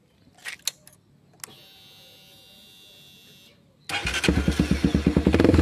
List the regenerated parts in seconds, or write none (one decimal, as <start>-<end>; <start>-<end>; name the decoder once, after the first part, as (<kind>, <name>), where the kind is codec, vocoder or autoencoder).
none